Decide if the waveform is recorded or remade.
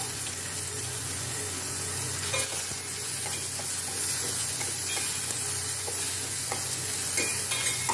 remade